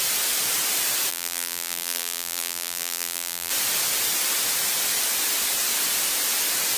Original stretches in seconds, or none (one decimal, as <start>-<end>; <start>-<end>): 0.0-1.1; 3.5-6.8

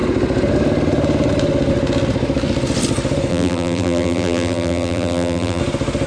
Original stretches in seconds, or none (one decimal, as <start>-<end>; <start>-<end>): 0.0-3.3; 5.6-6.1

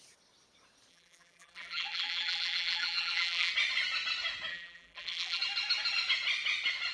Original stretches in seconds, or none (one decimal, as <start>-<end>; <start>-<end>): 0.0-0.9; 3.5-4.5; 5.4-6.9

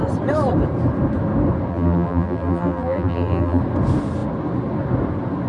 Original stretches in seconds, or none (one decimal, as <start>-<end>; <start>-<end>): 0.0-1.7; 3.6-5.5

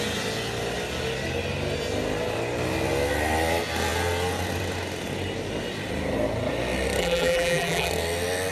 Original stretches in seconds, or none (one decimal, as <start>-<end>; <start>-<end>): 0.0-7.0; 7.9-8.5

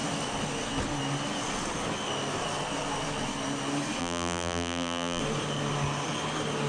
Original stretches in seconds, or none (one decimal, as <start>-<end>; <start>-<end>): 0.0-4.0; 5.2-6.7